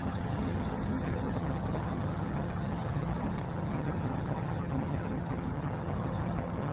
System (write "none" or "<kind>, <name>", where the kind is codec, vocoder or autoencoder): vocoder, HiFi-GAN